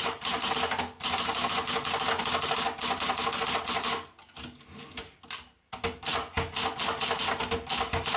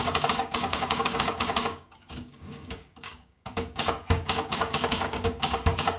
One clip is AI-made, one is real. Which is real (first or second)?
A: first